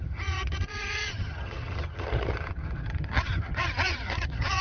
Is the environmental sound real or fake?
fake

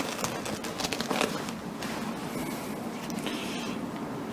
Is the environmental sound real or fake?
real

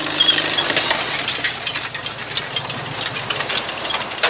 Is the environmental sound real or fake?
real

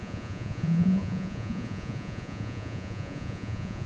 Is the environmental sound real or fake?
fake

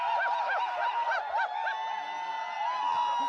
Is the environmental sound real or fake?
real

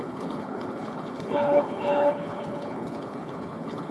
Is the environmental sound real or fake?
fake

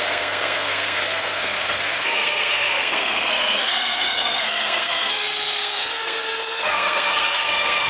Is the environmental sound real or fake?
fake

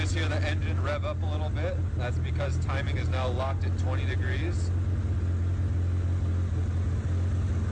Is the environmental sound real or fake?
real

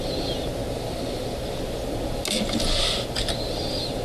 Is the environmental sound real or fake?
real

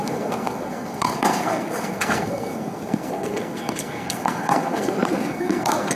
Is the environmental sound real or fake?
fake